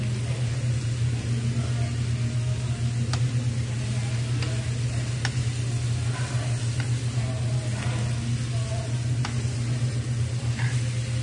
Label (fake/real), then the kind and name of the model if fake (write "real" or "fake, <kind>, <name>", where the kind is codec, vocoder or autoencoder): real